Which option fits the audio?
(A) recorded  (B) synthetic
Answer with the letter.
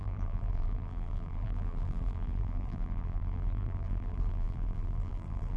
B